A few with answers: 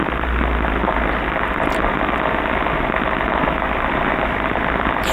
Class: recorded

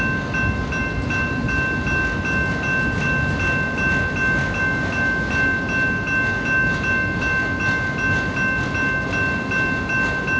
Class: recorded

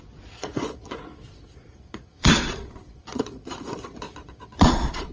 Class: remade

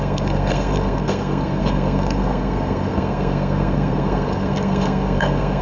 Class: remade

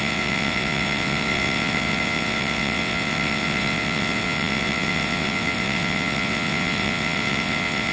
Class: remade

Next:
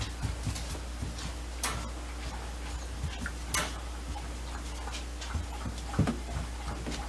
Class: recorded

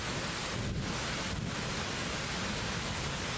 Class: recorded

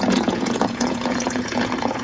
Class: remade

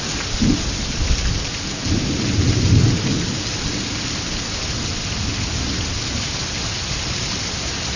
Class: recorded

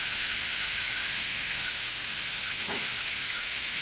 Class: remade